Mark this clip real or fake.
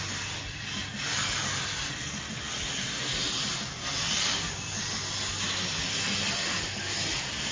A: real